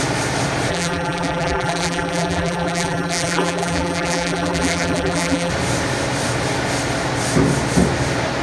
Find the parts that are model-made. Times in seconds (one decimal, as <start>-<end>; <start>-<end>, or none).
0.7-5.5